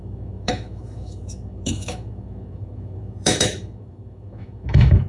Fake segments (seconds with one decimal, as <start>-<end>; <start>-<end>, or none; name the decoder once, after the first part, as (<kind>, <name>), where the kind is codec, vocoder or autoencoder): 0.0-5.1 (autoencoder, DAC-VAE)